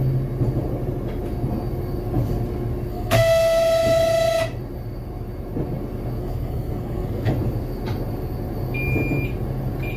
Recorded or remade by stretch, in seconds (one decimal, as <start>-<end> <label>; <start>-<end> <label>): 0.0-2.9 recorded; 2.9-3.6 remade; 3.6-6.2 recorded; 6.2-7.3 remade; 7.3-10.0 recorded